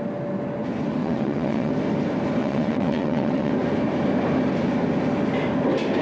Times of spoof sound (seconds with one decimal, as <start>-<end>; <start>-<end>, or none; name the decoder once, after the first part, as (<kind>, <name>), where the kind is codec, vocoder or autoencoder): 1.0-1.7 (vocoder, WaveNeXt); 2.4-3.5